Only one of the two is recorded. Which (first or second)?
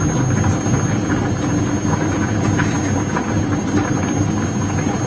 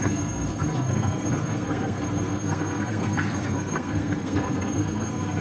first